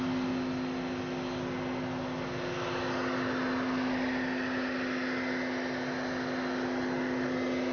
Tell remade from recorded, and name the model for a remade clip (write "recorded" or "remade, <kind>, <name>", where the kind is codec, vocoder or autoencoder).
recorded